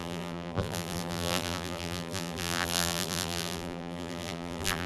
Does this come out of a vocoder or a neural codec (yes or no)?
yes